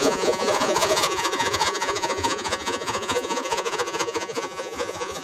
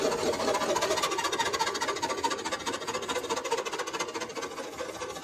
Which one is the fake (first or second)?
first